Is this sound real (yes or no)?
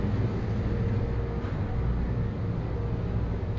yes